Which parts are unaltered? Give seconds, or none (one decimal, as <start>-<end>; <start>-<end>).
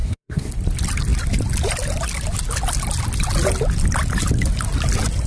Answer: 0.5-5.3